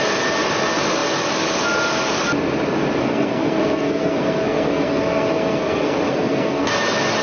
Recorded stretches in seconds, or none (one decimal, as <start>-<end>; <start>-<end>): 0.0-3.0; 6.7-7.2